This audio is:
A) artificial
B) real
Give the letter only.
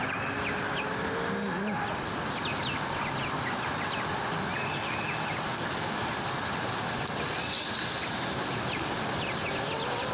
B